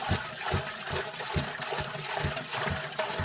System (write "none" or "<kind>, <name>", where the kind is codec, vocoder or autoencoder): none